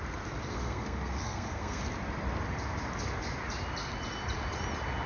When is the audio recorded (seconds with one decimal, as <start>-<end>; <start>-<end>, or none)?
0.0-0.5; 1.8-5.1